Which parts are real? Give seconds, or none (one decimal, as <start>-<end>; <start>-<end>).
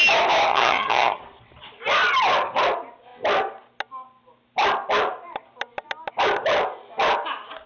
0.0-0.5; 1.2-7.7